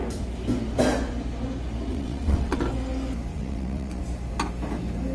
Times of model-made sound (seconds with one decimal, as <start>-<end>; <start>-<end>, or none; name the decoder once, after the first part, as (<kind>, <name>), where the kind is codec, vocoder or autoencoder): 1.9-2.6 (vocoder, WaveNeXt); 3.3-4.0